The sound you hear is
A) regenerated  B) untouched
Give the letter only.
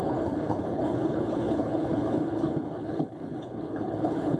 A